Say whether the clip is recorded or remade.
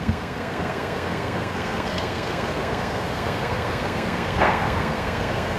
remade